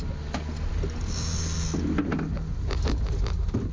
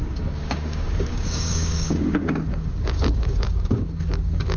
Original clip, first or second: first